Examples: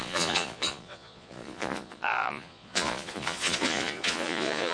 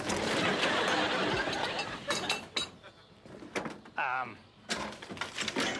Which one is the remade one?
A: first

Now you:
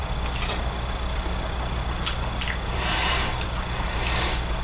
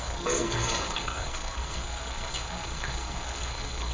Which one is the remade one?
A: second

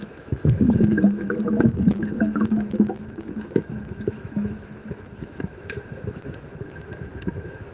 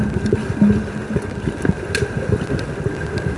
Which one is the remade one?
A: first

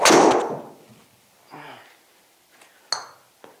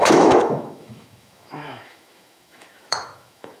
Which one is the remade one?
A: second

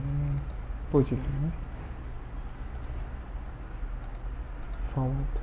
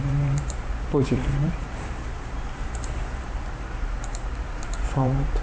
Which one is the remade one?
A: second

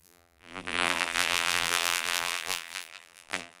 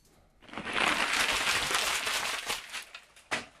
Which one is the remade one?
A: first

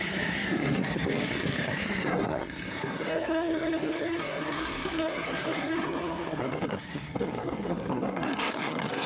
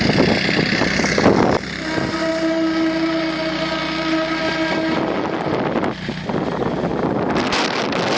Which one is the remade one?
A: first